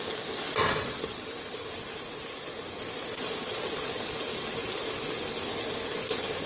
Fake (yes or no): no